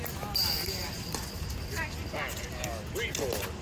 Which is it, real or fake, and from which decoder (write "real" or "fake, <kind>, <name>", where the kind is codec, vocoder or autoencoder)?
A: real